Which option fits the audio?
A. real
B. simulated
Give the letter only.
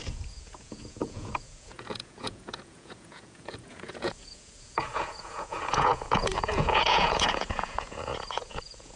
B